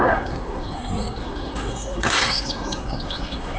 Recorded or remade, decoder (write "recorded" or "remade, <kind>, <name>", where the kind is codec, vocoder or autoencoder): remade, codec, SNAC